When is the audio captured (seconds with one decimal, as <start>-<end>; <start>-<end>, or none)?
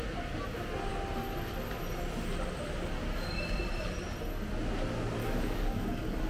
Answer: 0.0-5.2